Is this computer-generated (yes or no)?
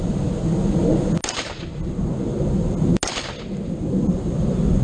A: no